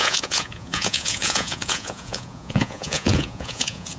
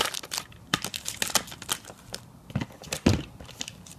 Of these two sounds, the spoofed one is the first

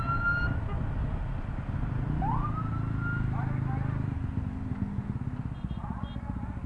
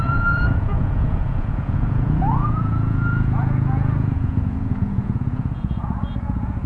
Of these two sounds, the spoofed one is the second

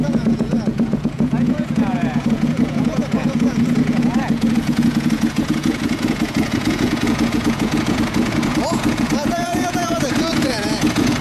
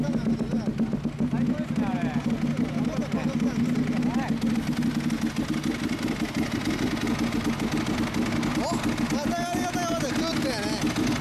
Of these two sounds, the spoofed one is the first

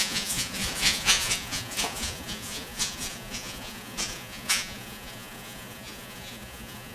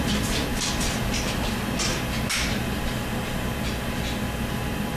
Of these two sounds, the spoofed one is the first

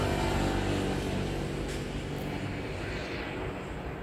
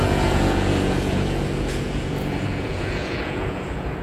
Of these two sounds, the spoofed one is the second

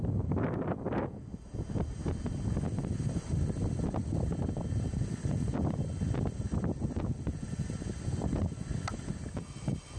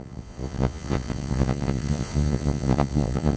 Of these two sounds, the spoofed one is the second